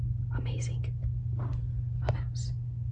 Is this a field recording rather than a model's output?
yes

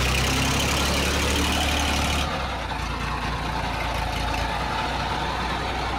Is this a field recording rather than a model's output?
yes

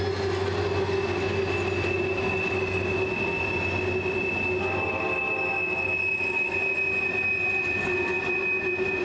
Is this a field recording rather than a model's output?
yes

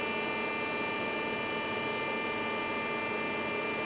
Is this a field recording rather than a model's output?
yes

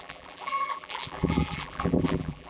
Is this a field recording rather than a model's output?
no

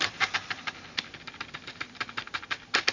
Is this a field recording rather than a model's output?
no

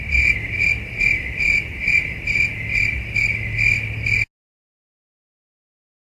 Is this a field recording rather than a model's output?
yes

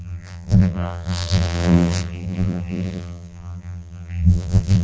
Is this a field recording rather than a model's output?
no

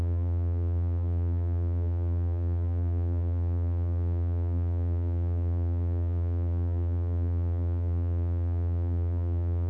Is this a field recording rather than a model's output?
no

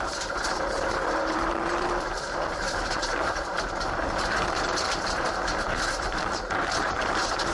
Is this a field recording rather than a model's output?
no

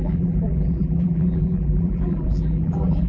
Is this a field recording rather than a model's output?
no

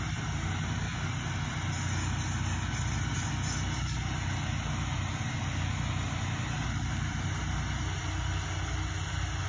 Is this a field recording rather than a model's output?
yes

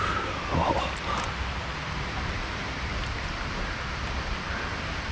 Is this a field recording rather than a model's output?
yes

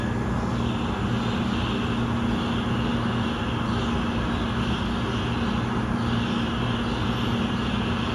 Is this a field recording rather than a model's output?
yes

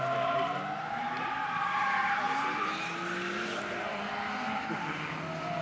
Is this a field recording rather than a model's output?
yes